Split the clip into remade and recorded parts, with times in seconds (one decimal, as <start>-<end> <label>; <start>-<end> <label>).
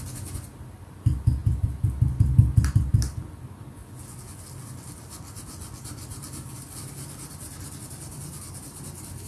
0.0-9.3 recorded